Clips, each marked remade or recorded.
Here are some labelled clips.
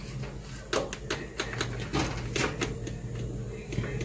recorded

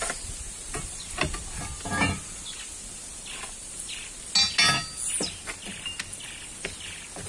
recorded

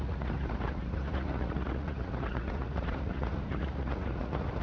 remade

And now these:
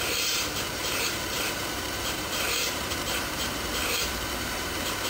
remade